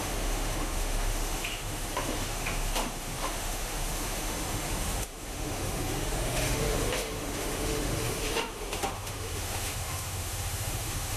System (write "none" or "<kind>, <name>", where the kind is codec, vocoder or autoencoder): autoencoder, DAC-VAE